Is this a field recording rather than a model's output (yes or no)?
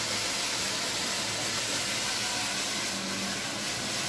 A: yes